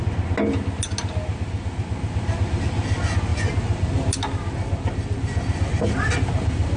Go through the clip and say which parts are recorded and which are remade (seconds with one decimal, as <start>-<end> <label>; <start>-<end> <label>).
0.0-6.8 recorded